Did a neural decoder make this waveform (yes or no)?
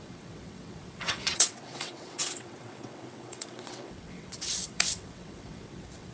yes